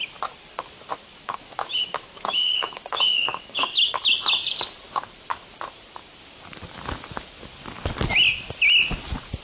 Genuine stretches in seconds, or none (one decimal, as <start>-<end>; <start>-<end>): 0.0-1.1; 4.0-9.4